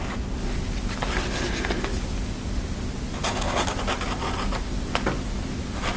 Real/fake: real